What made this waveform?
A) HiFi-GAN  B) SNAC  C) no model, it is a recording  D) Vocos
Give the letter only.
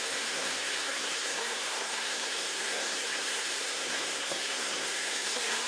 B